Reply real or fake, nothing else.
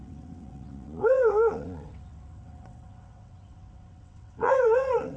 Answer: fake